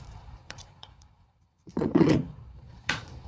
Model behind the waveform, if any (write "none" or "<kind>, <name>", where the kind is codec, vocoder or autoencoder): vocoder, Vocos